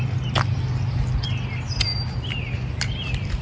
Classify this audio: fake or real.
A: real